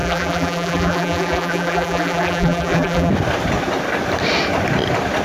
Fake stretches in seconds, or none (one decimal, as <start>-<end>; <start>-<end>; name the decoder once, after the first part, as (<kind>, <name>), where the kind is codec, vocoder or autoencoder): 0.0-3.1 (vocoder, BigVGAN v2)